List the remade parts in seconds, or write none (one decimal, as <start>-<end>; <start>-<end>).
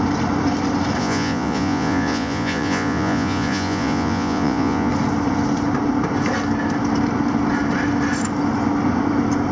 1.0-4.9